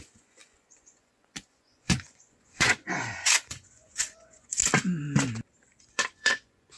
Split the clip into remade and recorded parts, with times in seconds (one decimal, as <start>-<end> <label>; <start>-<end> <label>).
0.0-4.6 remade; 4.6-5.8 recorded; 5.8-6.8 remade

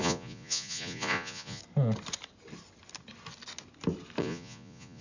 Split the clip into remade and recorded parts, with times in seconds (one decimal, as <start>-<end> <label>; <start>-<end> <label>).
0.0-1.6 remade; 1.6-4.2 recorded; 4.2-5.0 remade

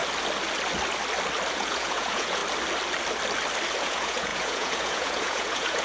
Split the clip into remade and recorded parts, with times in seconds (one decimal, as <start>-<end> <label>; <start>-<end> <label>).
0.0-1.5 recorded; 1.5-2.4 remade; 2.4-3.8 recorded; 3.8-5.8 remade

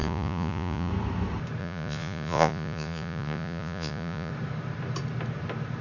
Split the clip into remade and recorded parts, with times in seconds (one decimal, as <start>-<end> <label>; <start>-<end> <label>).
0.0-0.9 remade; 0.9-1.6 recorded; 1.6-4.3 remade; 4.3-5.8 recorded

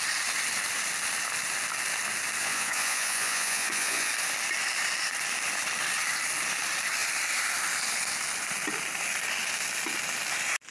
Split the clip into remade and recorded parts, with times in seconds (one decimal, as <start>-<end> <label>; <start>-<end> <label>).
0.0-2.4 recorded; 2.4-4.1 remade; 4.1-10.7 recorded

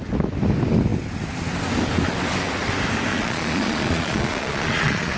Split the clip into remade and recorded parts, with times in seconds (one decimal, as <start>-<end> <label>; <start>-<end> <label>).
0.0-3.1 recorded; 3.1-5.2 remade

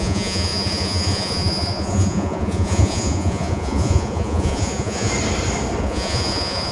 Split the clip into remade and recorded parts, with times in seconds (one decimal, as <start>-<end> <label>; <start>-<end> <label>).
0.0-5.1 remade; 5.1-5.8 recorded; 5.8-6.7 remade

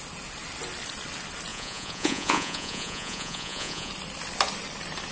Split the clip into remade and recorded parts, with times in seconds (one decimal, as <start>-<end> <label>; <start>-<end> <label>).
0.0-1.5 recorded; 1.5-3.9 remade; 3.9-5.1 recorded